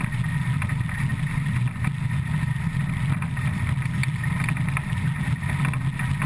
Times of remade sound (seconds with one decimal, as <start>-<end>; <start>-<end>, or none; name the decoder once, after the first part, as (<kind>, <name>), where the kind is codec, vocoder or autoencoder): none